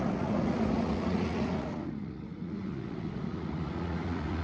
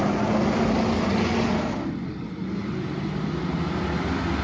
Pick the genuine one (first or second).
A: second